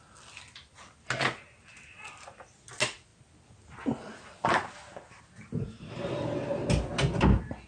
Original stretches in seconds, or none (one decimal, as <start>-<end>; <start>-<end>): 0.0-7.7